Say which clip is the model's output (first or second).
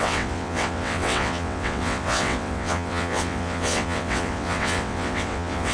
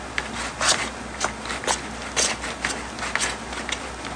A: first